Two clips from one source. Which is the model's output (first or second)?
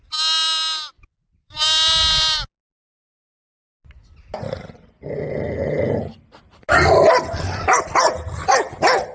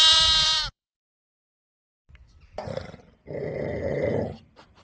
second